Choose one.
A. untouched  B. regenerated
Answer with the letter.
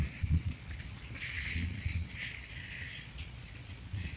B